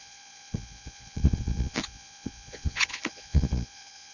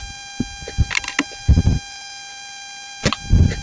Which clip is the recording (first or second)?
second